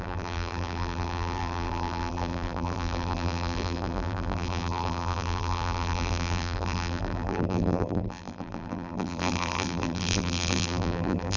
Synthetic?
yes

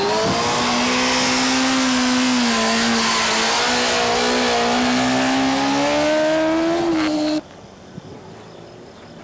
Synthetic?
no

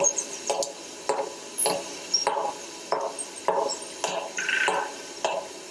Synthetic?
no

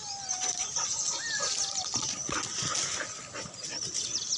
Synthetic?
no